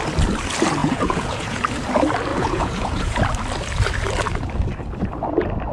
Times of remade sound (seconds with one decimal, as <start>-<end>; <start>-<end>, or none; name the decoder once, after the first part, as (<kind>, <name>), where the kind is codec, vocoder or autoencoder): 0.8-1.6 (vocoder, Vocos); 2.3-3.2